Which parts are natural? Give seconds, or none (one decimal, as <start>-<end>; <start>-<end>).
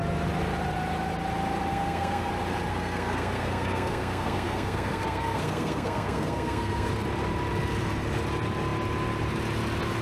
0.0-1.7; 2.3-2.7; 6.9-10.0